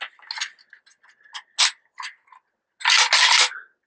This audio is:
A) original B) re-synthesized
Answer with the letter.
A